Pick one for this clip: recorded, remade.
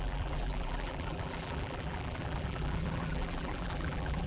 remade